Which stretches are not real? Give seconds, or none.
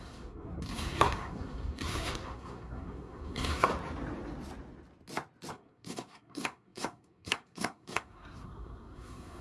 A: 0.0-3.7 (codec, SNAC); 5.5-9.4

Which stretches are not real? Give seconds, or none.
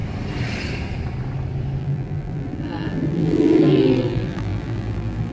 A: 1.8-5.3 (vocoder, BigVGAN v2)